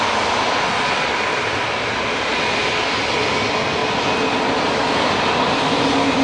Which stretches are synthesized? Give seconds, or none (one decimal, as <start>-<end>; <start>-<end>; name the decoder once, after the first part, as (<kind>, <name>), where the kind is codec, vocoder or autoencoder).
none